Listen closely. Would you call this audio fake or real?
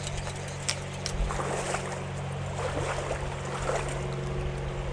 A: real